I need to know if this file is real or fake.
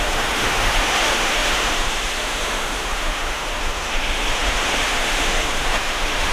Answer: fake